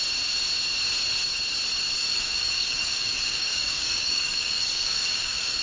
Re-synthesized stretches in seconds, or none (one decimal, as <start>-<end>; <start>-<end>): 2.0-5.6